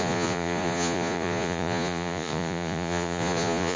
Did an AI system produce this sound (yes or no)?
yes